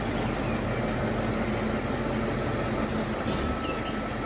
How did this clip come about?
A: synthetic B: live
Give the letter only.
B